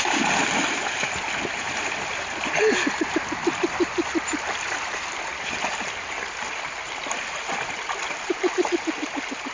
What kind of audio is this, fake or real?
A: real